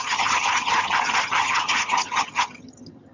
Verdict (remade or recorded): remade